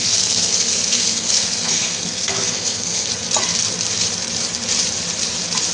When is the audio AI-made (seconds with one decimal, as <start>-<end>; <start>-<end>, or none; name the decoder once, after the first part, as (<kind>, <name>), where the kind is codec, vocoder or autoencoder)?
0.0-3.1 (codec, SNAC)